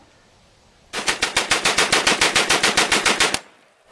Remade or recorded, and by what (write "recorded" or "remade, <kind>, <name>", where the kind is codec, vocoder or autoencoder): recorded